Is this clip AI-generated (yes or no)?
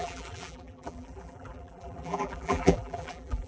yes